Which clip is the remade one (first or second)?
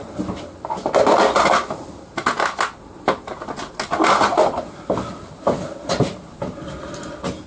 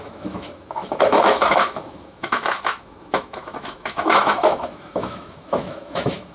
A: second